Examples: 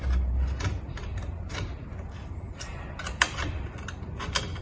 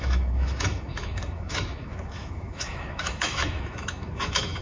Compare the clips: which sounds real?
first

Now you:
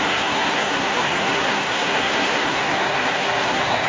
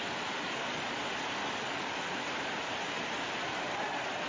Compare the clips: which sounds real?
second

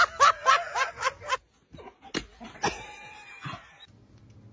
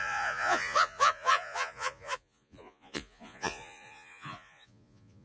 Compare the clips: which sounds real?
first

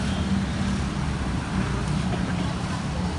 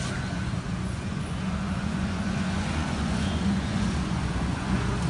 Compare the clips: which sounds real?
first